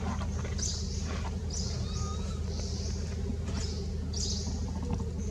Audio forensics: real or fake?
real